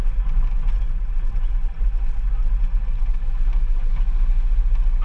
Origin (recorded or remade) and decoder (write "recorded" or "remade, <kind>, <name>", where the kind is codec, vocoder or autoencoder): recorded